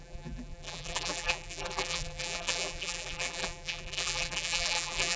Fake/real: fake